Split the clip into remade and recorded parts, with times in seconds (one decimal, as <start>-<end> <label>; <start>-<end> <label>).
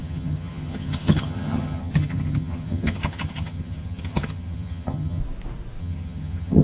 0.0-5.2 remade; 5.2-5.8 recorded; 5.8-6.6 remade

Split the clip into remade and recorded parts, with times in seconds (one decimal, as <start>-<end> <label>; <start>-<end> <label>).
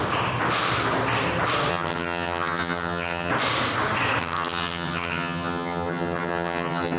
0.0-1.7 recorded; 1.7-3.3 remade; 3.3-4.2 recorded; 4.2-7.0 remade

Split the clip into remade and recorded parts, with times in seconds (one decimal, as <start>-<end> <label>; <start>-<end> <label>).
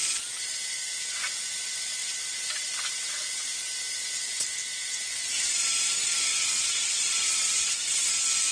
0.0-6.3 recorded; 6.3-8.1 remade; 8.1-8.5 recorded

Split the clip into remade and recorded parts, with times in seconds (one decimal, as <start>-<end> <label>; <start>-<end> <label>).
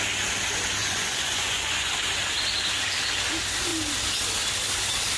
0.0-0.8 recorded; 0.8-1.9 remade; 1.9-5.2 recorded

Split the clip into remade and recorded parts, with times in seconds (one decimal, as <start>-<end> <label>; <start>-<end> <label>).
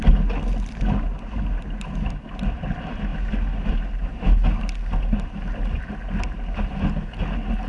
0.0-7.7 recorded